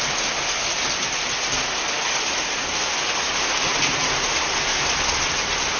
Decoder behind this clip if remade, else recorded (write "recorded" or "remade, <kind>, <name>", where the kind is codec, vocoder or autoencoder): recorded